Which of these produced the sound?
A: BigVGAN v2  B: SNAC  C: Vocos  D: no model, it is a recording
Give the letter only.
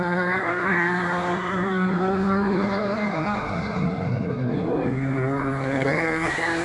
B